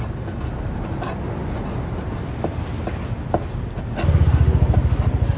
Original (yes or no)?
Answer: yes